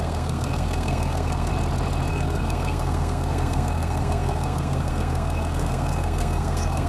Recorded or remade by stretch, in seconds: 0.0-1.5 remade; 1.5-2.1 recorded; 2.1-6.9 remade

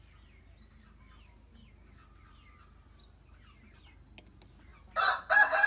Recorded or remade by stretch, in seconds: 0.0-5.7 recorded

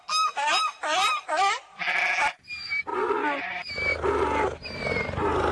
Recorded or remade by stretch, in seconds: 0.0-5.5 recorded

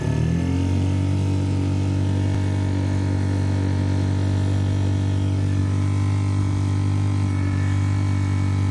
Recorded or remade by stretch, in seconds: 0.0-8.7 recorded